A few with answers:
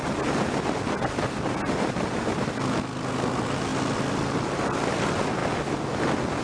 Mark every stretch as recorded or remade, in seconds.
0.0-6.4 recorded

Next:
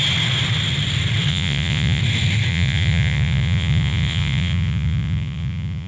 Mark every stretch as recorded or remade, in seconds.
0.0-1.3 recorded; 1.3-2.0 remade; 2.0-2.5 recorded; 2.5-5.9 remade

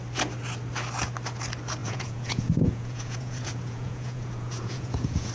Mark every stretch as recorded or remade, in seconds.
0.0-1.8 recorded; 1.8-5.3 remade